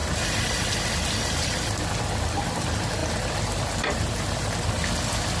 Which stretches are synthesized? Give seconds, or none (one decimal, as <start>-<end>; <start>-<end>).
0.0-2.4; 3.0-4.7